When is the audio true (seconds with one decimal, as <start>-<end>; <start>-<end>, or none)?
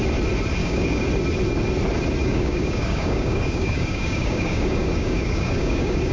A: 0.0-0.6; 1.1-2.2